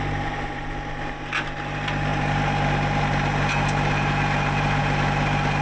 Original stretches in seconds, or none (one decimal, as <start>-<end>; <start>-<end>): 0.0-5.6